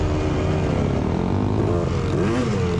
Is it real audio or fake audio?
real